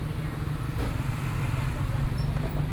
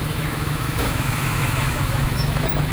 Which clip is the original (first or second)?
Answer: first